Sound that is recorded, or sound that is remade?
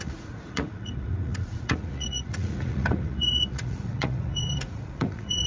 remade